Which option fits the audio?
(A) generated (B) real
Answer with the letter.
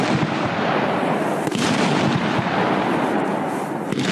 B